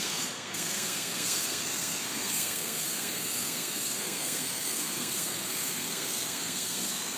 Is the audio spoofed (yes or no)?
yes